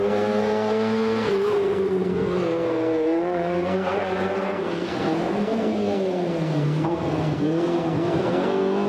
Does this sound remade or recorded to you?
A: remade